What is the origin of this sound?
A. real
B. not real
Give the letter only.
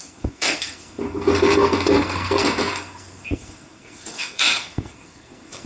B